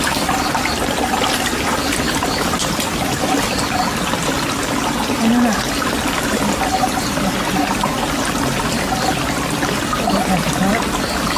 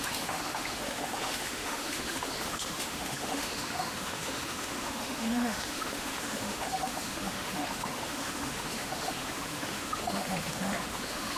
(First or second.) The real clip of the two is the first